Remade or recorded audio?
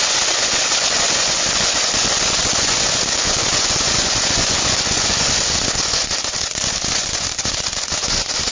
remade